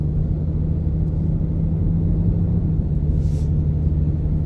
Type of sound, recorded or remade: recorded